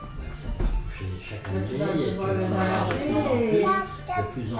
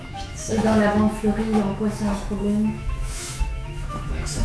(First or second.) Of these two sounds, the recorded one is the first